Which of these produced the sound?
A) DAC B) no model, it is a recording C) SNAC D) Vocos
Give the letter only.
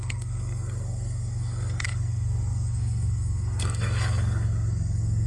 C